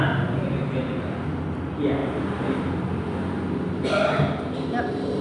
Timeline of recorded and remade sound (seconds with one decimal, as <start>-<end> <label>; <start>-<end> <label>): 0.0-5.2 recorded